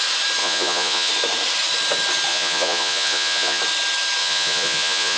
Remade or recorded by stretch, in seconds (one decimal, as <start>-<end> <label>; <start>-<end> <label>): 0.0-0.4 recorded; 0.4-1.1 remade; 1.1-2.3 recorded; 2.3-3.6 remade; 3.6-4.2 recorded; 4.2-5.2 remade